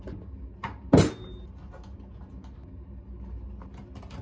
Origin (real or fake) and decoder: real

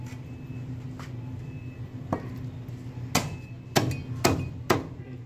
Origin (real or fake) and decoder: real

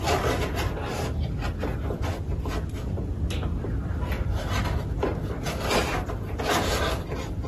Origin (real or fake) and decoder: real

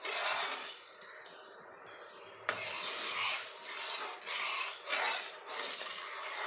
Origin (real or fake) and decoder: real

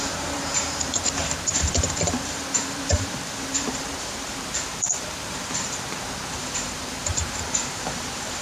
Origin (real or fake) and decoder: fake, vocoder, BigVGAN v2